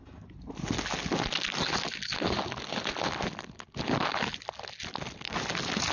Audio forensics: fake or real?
real